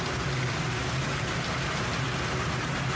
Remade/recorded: remade